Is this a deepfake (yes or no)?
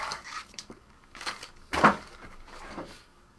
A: yes